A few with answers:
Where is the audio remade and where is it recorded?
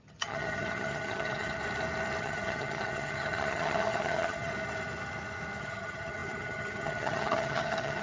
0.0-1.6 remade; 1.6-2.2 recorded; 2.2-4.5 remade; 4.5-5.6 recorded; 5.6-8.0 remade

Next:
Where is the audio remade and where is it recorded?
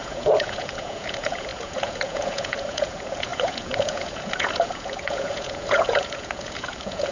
0.0-7.1 remade